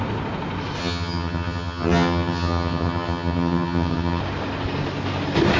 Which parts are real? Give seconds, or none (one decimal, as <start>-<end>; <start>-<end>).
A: 0.0-0.8; 4.2-5.6